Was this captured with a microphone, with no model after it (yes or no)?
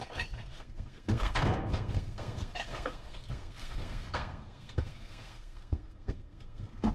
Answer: no